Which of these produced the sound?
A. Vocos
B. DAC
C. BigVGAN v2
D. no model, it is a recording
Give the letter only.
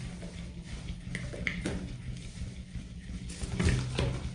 D